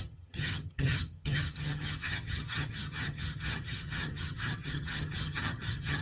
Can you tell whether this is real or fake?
fake